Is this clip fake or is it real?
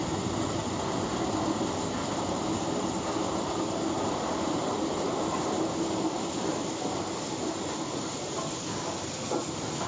real